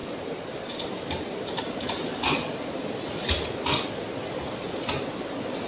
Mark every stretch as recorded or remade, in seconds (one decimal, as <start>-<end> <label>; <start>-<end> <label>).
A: 0.0-1.4 remade; 1.4-5.7 recorded